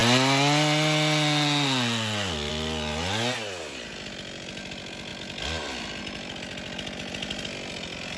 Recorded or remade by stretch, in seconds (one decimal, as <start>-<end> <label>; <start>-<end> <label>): 0.0-8.2 recorded